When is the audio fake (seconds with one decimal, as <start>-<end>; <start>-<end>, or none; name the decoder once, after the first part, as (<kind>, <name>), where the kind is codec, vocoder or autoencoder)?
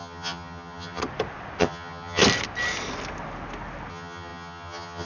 0.0-1.0 (vocoder, HiFi-GAN); 1.6-2.2; 3.9-5.1